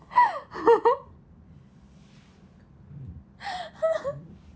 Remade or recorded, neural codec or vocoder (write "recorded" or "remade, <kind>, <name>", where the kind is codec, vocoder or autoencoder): recorded